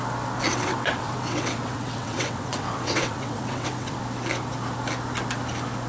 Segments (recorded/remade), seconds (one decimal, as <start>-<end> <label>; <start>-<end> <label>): 0.0-0.5 recorded; 0.5-4.0 remade; 4.0-5.9 recorded